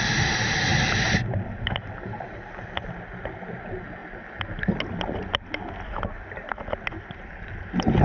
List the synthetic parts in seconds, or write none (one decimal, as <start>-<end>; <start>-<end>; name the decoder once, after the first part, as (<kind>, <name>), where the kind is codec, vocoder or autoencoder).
none